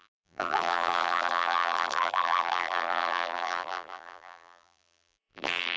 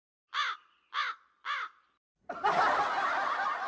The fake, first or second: first